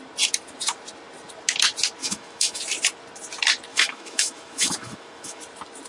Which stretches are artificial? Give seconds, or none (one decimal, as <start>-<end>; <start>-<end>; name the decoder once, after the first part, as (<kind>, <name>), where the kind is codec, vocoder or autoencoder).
2.0-2.6 (autoencoder, DAC-VAE); 3.7-5.4